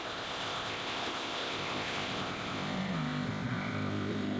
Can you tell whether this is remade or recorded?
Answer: remade